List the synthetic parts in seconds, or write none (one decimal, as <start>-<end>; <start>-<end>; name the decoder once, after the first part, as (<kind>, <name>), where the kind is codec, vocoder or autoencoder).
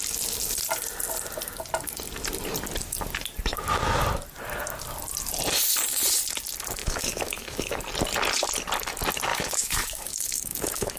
6.8-7.8 (autoencoder, DAC-VAE); 9.3-11.0